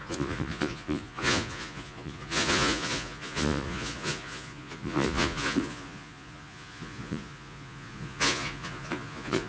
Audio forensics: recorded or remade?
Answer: remade